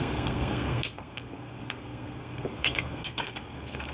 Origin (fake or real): fake